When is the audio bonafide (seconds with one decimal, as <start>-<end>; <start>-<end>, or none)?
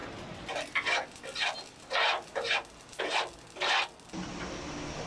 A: 0.0-5.1